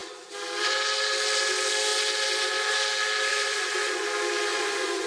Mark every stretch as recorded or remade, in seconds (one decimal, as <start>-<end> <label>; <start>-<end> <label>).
0.0-3.3 recorded; 3.3-4.1 remade; 4.1-4.5 recorded; 4.5-5.1 remade